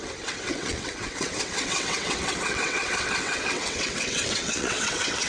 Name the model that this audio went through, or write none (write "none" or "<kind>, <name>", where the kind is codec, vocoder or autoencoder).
vocoder, WaveNeXt